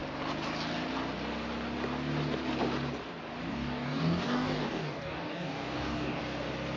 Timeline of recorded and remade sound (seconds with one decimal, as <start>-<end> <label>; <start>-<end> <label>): 0.0-3.5 recorded; 3.5-6.2 remade; 6.2-6.8 recorded